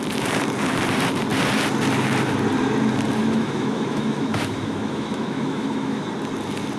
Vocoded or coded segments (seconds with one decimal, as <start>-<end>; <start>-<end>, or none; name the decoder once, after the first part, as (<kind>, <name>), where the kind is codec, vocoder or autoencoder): 3.2-6.0 (autoencoder, DAC-VAE)